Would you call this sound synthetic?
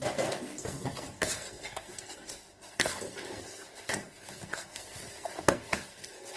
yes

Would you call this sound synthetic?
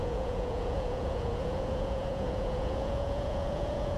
yes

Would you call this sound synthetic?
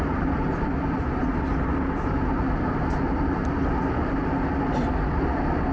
no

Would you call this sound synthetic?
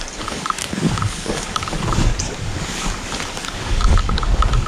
yes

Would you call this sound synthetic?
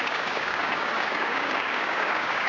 yes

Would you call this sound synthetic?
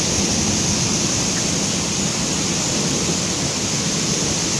no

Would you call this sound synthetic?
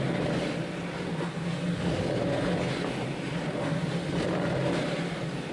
no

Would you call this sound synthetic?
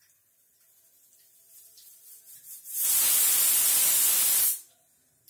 no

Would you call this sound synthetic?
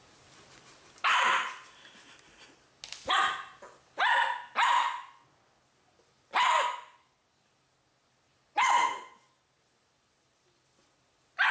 no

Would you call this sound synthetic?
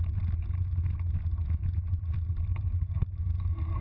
no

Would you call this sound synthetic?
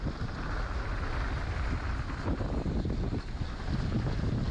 no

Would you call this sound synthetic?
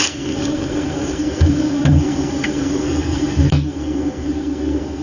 yes